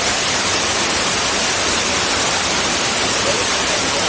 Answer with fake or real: real